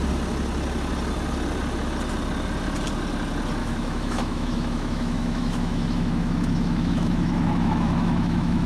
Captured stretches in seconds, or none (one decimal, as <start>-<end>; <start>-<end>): 0.0-3.6